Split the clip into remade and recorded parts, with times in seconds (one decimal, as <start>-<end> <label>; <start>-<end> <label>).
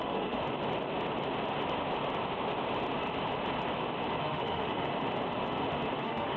0.0-0.4 remade; 0.4-4.2 recorded; 4.2-4.9 remade; 4.9-6.0 recorded; 6.0-6.4 remade